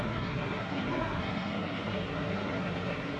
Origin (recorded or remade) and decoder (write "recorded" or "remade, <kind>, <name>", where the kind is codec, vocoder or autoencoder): remade, codec, SNAC